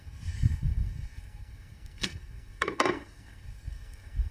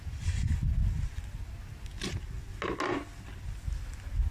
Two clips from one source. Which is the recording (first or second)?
second